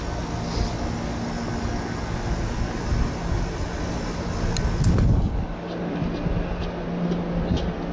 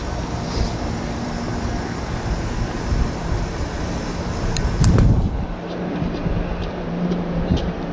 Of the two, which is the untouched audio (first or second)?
first